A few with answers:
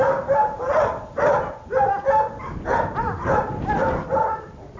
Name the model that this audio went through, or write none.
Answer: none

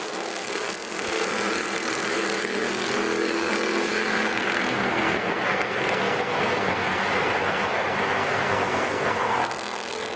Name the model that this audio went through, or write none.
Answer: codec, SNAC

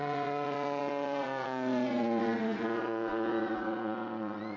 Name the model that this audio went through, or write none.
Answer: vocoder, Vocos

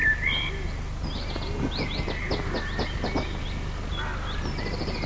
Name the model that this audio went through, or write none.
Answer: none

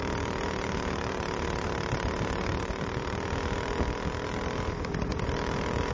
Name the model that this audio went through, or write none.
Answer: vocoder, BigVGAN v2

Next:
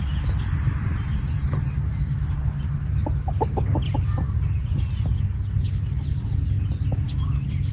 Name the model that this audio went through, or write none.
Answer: none